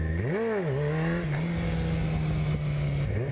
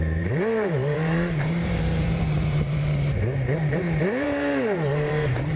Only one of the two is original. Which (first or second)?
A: first